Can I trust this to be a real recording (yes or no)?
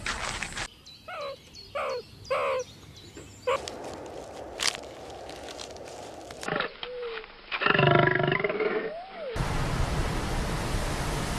yes